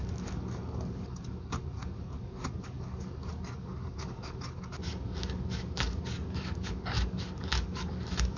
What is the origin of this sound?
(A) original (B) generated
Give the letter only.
B